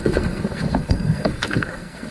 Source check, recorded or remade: remade